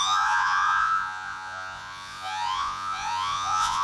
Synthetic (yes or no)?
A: yes